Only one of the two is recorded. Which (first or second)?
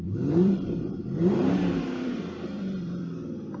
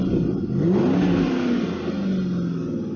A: second